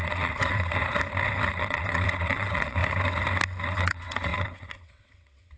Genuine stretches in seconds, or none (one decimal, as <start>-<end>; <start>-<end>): 0.8-1.5; 2.8-3.7